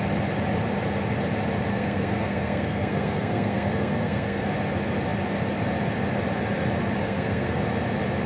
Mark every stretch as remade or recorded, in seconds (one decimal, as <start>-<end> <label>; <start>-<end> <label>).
0.0-1.7 recorded; 1.7-4.5 remade; 4.5-7.0 recorded; 7.0-7.6 remade; 7.6-8.3 recorded

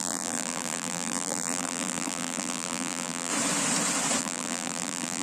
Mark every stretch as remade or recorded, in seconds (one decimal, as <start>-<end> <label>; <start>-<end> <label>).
0.0-3.3 remade; 3.3-4.2 recorded; 4.2-5.2 remade

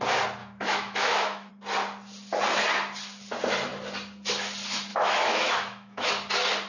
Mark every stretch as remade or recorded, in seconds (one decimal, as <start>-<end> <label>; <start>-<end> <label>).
0.0-0.4 recorded; 0.4-1.5 remade; 1.5-4.9 recorded; 4.9-6.1 remade; 6.1-6.7 recorded

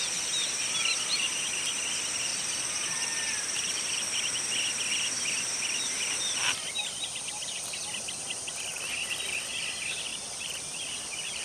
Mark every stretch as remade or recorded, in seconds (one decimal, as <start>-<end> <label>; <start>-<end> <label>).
0.0-2.3 recorded; 2.3-3.9 remade; 3.9-10.1 recorded; 10.1-11.4 remade

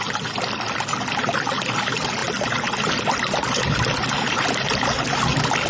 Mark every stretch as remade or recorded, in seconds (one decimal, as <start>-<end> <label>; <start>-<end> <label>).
0.0-5.7 recorded